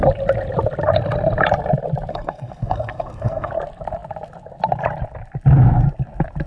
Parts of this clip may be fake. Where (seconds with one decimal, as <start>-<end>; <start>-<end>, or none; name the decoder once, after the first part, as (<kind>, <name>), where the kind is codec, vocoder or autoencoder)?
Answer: 2.1-3.5 (codec, SNAC)